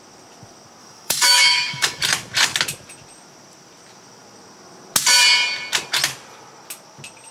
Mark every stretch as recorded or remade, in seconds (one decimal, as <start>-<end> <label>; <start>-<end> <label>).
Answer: 0.0-0.8 recorded; 0.8-2.0 remade; 2.0-7.3 recorded